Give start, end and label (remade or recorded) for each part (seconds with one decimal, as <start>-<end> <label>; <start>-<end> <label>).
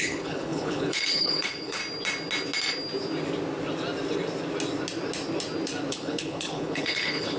0.0-1.8 remade; 1.8-5.9 recorded; 5.9-7.4 remade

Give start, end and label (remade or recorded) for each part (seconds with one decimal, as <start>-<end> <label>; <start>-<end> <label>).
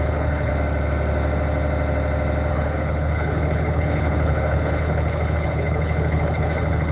0.0-0.5 remade; 0.5-2.5 recorded; 2.5-6.9 remade